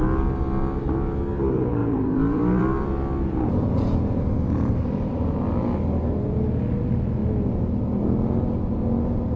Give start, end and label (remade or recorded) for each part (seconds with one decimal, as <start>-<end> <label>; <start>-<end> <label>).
0.0-1.8 recorded; 1.8-4.7 remade; 4.7-9.4 recorded